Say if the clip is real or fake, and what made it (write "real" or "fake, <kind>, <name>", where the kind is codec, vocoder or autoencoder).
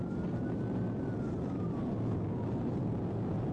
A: real